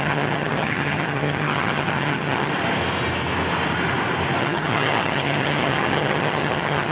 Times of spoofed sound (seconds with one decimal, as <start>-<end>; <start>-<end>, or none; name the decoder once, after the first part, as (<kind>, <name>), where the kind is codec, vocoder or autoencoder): 0.0-2.5 (vocoder, HiFi-GAN); 4.4-6.9